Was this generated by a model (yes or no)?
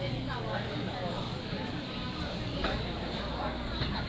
yes